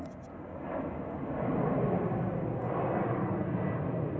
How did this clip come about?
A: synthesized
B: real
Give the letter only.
B